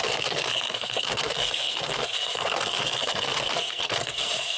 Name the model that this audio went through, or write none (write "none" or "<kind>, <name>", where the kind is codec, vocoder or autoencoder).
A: codec, SNAC